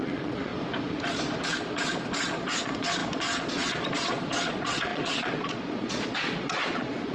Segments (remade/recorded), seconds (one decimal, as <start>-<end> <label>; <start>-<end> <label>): 0.0-0.5 remade; 0.5-1.7 recorded; 1.7-7.1 remade